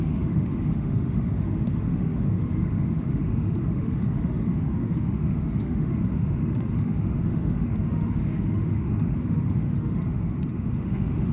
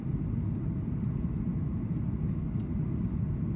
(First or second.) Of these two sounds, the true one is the second